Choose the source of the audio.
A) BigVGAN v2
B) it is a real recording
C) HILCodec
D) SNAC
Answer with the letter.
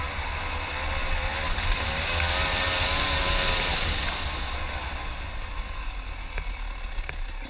B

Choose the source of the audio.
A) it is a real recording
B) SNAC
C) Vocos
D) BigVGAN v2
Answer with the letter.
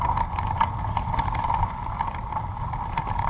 A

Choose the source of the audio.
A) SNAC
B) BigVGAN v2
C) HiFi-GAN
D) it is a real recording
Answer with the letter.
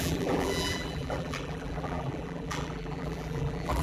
B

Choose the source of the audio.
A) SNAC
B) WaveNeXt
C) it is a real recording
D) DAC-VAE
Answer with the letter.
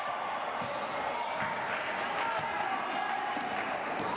C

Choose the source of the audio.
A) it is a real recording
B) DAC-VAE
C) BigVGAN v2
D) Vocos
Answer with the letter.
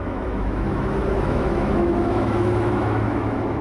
B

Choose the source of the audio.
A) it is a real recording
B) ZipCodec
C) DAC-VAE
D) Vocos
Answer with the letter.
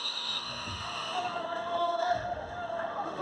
C